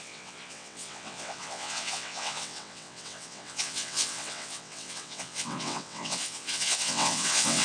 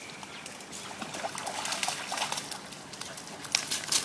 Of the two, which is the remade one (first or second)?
first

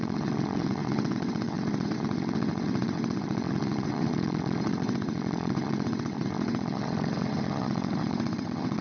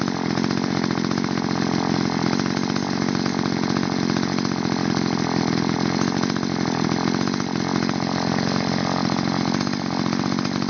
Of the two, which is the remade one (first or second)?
first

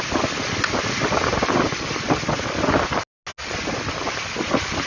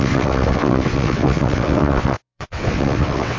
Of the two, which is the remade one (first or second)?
second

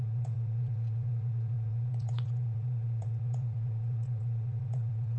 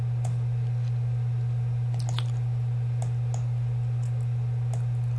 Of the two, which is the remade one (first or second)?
first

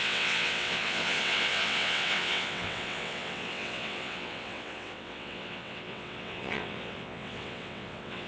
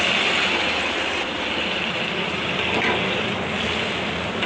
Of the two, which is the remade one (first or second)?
first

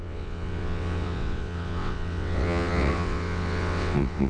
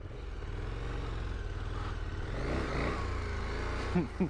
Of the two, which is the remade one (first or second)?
first